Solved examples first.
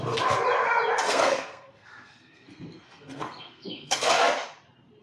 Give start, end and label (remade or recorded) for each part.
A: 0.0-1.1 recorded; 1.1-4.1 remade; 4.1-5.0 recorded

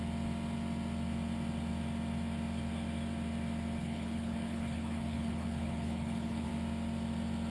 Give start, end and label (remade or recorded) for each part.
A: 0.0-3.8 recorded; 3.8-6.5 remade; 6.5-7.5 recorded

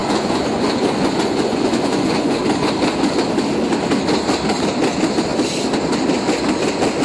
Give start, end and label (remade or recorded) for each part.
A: 0.0-2.4 remade; 2.4-7.0 recorded

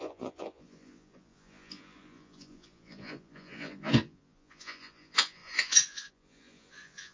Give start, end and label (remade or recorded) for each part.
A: 0.0-7.1 remade

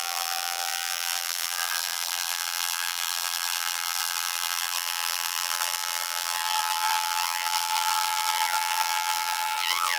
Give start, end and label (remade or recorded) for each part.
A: 0.0-10.0 remade

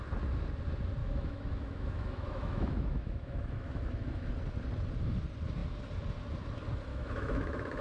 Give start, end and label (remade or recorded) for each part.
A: 0.0-1.0 recorded; 1.0-4.3 remade; 4.3-6.9 recorded; 6.9-7.8 remade